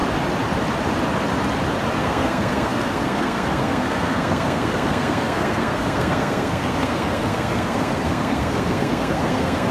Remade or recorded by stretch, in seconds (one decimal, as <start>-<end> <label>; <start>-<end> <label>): 0.0-2.0 recorded; 2.0-9.7 remade